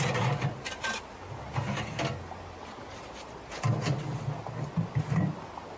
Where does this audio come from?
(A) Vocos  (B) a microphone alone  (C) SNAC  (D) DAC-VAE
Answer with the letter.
B